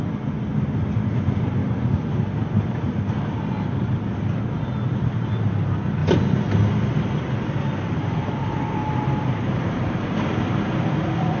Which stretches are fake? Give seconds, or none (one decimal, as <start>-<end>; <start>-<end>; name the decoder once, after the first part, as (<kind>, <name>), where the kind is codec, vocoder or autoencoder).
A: 1.6-5.1 (vocoder, BigVGAN v2); 8.8-10.9